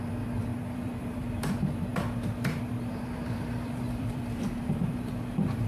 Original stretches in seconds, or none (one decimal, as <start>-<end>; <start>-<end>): none